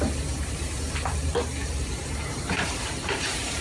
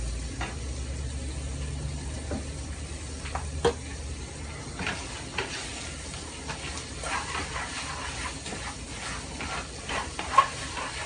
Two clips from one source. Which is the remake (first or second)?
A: first